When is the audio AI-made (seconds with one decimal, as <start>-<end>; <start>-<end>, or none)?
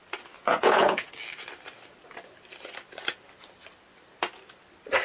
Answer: 0.4-1.1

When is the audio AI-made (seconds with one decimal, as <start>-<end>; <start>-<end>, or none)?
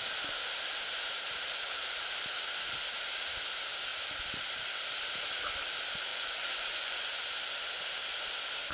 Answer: 6.1-7.3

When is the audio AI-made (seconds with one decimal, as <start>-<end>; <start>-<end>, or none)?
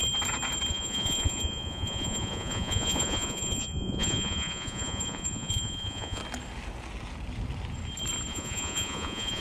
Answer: 0.7-6.2; 8.3-9.4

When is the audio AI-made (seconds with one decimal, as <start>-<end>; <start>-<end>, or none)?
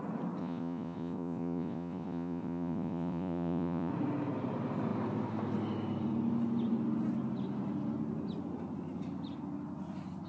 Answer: 0.4-3.9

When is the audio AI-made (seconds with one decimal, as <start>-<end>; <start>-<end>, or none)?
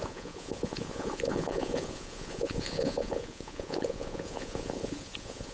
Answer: 0.0-5.5